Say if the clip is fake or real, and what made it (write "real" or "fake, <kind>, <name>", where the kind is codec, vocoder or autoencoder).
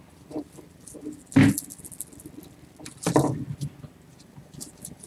real